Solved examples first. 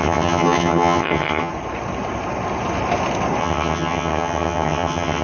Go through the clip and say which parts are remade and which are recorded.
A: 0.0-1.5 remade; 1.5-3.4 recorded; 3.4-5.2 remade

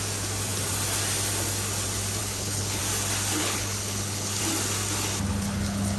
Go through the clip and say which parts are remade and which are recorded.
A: 0.0-2.2 recorded; 2.2-2.8 remade; 2.8-3.4 recorded; 3.4-4.4 remade; 4.4-5.3 recorded; 5.3-6.0 remade

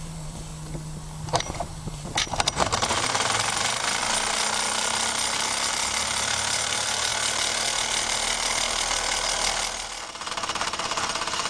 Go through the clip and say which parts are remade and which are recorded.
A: 0.0-0.5 remade; 0.5-1.4 recorded; 1.4-4.0 remade; 4.0-5.7 recorded; 5.7-7.1 remade; 7.1-10.3 recorded; 10.3-11.5 remade

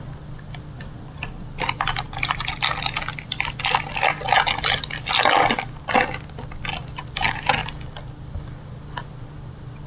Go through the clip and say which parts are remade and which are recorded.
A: 0.0-9.9 recorded

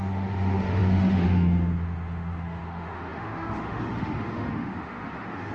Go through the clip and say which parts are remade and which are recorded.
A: 0.0-5.5 remade